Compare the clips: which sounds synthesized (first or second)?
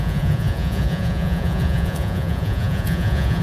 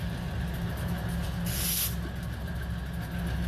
first